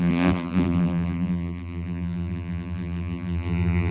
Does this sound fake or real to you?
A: fake